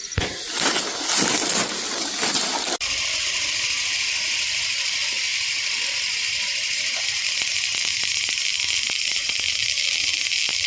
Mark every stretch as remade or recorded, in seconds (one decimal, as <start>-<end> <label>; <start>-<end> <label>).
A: 0.0-5.3 recorded; 5.3-7.6 remade; 7.6-10.7 recorded